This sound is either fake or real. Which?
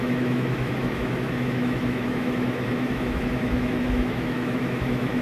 fake